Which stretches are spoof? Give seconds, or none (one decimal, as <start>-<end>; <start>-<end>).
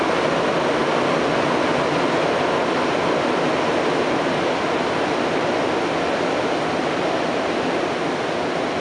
0.0-0.8; 5.9-8.8